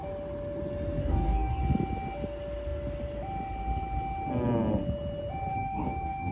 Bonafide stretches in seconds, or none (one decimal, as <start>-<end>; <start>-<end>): 0.0-1.0; 1.6-5.5